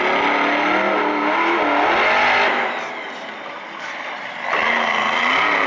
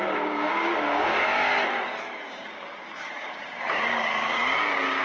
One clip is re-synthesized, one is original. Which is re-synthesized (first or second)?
second